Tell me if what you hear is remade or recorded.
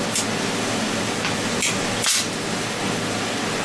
recorded